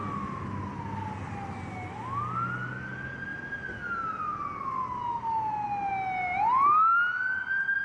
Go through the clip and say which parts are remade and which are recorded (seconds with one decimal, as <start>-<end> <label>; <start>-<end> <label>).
0.0-7.8 recorded